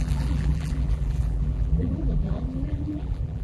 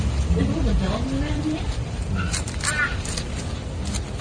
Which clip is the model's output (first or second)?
first